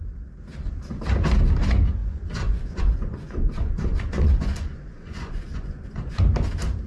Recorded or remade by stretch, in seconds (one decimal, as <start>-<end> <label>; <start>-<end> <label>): 0.0-2.0 recorded; 2.0-6.1 remade; 6.1-6.9 recorded